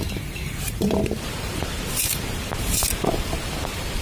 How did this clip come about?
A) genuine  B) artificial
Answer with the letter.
B